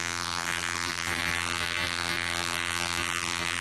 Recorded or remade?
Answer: remade